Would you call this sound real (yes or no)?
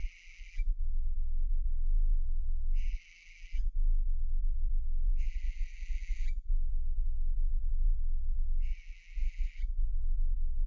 no